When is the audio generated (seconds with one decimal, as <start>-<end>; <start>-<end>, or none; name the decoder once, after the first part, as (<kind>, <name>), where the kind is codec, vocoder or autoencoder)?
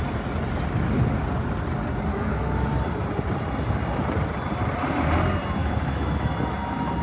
2.1-2.6 (autoencoder, DAC-VAE); 5.6-6.5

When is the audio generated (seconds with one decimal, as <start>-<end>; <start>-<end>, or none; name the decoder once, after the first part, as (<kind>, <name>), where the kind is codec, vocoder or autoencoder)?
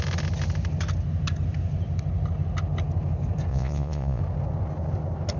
3.5-4.2 (vocoder, Vocos)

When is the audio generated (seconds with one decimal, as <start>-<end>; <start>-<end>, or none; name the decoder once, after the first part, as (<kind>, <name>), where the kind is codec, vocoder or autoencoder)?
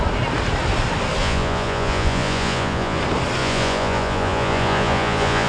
1.2-3.0 (vocoder, Vocos); 3.4-5.5